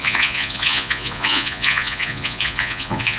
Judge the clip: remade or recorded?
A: remade